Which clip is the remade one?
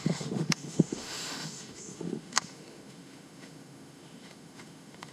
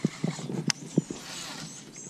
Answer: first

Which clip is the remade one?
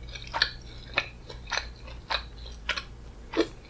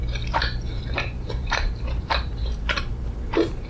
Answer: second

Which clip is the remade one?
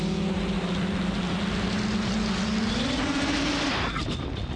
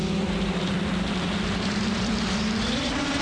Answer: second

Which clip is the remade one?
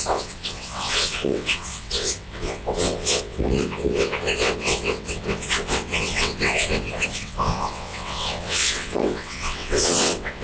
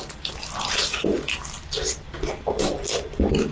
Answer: first